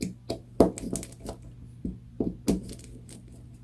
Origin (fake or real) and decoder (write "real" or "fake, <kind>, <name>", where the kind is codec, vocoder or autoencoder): real